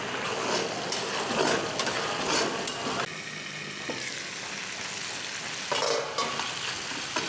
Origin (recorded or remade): recorded